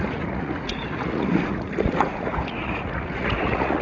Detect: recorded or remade remade